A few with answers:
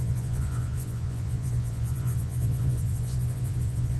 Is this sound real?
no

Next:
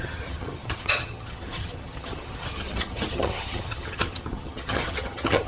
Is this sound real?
no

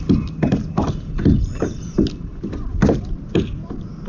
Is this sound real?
yes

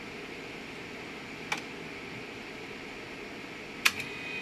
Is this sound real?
yes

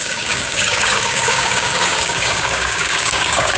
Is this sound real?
no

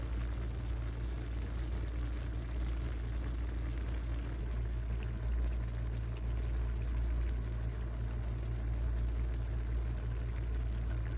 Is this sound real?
yes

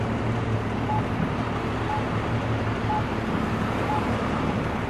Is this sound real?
no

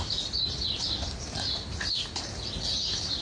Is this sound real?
yes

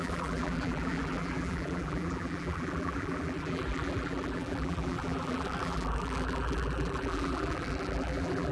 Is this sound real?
no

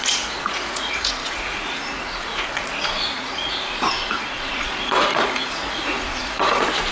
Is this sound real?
no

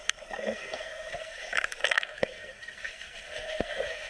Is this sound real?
no